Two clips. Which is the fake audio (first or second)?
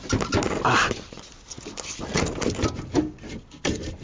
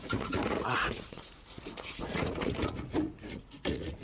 second